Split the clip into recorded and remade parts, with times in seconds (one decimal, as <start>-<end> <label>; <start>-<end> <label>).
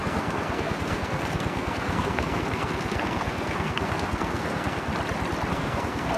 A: 0.0-4.9 remade; 4.9-5.5 recorded; 5.5-6.2 remade